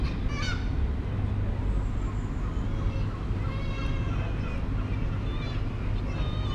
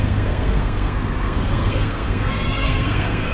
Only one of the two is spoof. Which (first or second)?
second